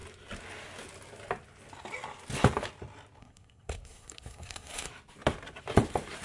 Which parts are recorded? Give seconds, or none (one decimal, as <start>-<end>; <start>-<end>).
0.0-3.2; 4.9-6.2